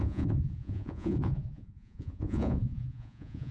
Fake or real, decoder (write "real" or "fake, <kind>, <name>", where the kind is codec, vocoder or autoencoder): fake, vocoder, Vocos